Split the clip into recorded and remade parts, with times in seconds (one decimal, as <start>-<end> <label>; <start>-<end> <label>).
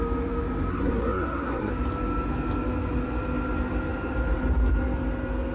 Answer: 0.0-0.7 recorded; 0.7-1.7 remade; 1.7-5.5 recorded